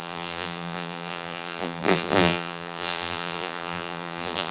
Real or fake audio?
fake